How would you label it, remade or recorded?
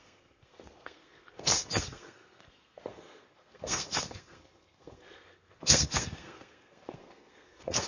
remade